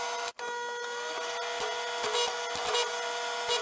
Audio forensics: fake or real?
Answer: real